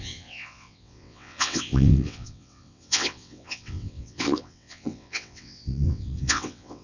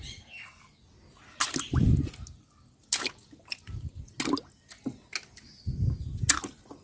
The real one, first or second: second